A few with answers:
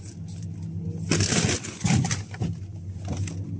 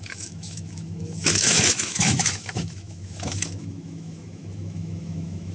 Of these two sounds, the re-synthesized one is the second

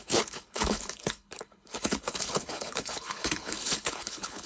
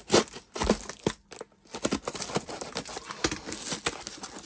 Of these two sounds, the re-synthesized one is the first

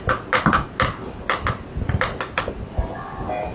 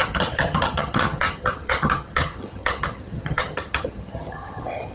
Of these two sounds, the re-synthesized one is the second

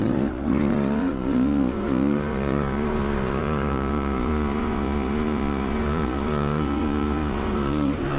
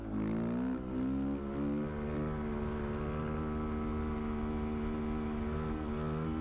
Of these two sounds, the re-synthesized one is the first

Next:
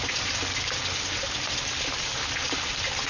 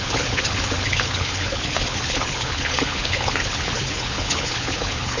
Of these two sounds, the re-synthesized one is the second